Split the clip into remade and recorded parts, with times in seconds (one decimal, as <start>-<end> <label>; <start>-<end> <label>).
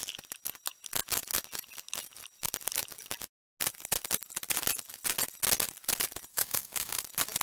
0.0-6.3 recorded; 6.3-7.0 remade; 7.0-7.4 recorded